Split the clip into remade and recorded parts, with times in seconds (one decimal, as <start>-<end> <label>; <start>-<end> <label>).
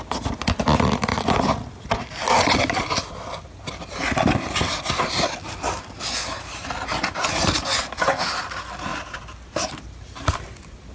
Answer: 0.0-10.9 recorded